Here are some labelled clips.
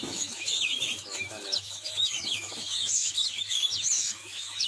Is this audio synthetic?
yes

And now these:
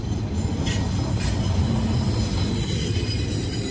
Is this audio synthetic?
no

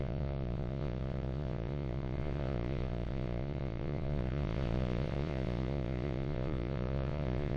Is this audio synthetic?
yes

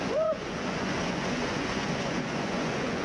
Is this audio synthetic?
yes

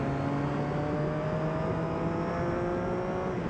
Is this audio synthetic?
no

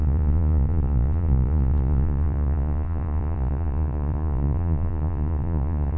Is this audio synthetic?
yes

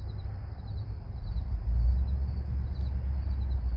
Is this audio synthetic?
no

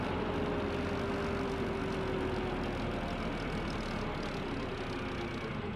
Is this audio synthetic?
no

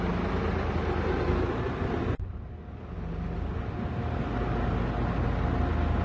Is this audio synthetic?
no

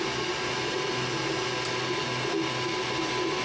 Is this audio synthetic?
no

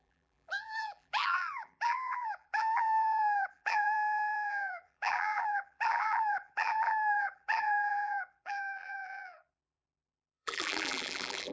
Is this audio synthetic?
yes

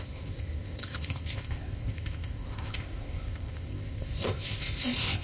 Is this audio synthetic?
yes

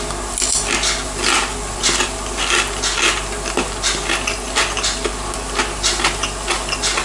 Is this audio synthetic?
no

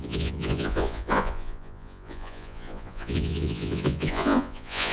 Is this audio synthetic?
yes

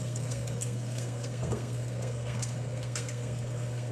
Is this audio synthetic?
yes